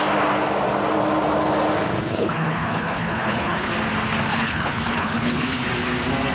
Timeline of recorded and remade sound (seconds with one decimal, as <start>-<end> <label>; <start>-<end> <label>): 0.0-2.0 recorded; 2.0-3.7 remade; 3.7-4.3 recorded; 4.3-5.7 remade; 5.7-6.3 recorded